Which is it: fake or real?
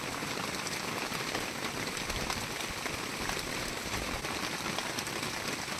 real